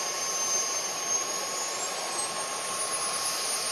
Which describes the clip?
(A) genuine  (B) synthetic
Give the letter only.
A